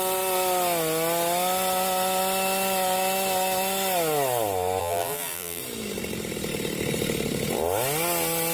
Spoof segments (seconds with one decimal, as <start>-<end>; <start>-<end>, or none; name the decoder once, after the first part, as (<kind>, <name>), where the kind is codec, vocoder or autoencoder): 4.8-5.6 (vocoder, BigVGAN v2)